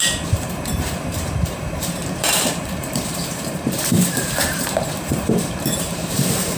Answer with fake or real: fake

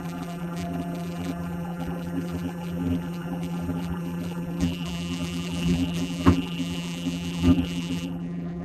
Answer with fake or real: fake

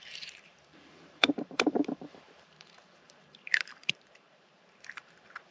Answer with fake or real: fake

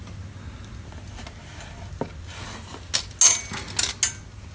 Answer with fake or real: real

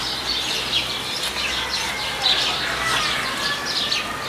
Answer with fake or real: real